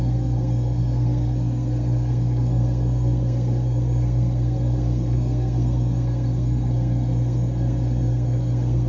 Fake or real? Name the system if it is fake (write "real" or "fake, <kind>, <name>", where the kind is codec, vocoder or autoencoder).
fake, codec, SNAC